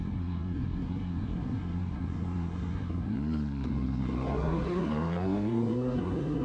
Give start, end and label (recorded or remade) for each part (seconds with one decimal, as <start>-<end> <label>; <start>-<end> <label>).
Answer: 0.0-6.4 remade